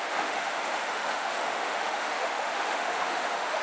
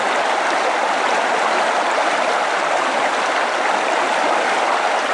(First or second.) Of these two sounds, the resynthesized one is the first